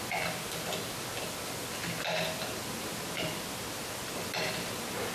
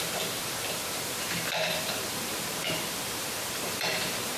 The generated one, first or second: second